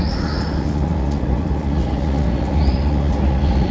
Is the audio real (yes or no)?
no